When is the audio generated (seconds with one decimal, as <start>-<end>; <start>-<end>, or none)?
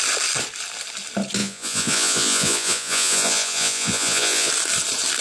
1.4-4.5